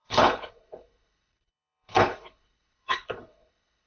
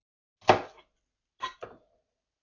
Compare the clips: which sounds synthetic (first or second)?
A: first